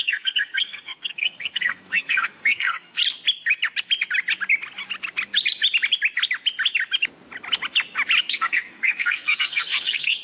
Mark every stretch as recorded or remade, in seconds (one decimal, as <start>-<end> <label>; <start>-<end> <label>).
0.0-3.0 remade; 3.0-8.2 recorded; 8.2-10.2 remade